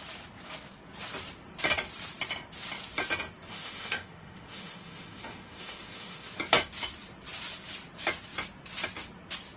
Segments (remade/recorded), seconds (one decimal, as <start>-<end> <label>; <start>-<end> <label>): 0.0-3.5 recorded; 3.5-6.3 remade; 6.3-9.6 recorded